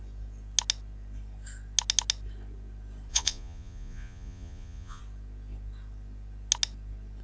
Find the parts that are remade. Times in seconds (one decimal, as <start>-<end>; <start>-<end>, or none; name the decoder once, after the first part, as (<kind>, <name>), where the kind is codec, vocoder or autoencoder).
3.1-5.0 (vocoder, Vocos)